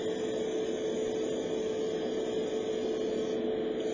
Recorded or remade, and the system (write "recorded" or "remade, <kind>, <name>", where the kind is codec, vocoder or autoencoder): recorded